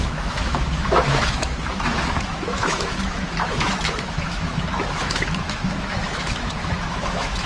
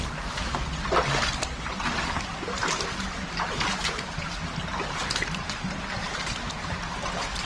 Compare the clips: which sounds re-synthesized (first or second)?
first